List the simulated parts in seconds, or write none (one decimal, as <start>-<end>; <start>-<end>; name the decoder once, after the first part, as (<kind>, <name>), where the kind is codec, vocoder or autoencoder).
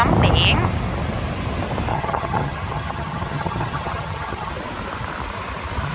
1.9-4.5 (vocoder, HiFi-GAN)